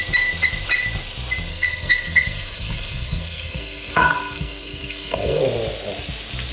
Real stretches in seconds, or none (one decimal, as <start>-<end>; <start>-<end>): 0.0-1.5; 5.4-6.5